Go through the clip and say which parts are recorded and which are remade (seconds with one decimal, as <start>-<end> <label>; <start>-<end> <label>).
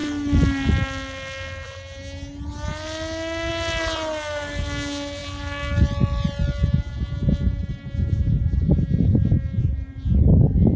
0.0-10.8 recorded